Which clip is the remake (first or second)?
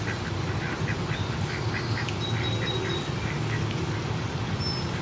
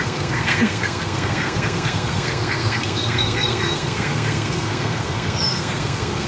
second